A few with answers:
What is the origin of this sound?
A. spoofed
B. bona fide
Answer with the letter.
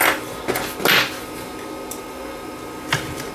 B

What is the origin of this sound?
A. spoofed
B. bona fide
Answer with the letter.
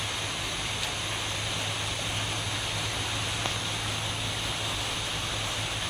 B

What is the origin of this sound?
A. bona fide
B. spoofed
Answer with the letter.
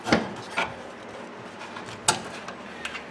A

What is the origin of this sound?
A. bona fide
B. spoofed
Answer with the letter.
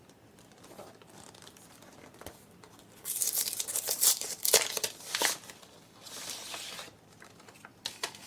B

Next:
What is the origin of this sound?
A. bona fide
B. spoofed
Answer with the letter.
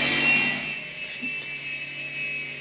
A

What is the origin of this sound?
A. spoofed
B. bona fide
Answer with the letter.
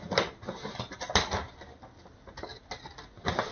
B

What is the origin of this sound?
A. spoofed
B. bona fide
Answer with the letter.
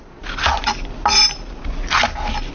B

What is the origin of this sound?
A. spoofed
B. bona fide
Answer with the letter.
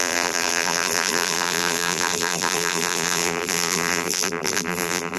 A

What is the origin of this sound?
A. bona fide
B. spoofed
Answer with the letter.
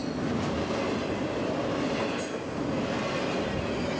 A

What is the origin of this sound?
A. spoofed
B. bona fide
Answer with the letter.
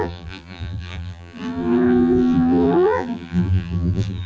A